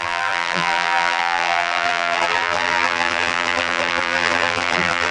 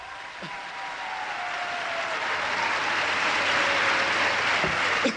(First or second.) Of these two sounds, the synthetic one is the first